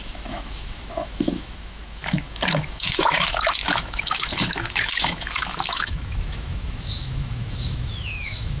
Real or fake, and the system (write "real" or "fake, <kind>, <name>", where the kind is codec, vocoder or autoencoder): fake, autoencoder, DAC-VAE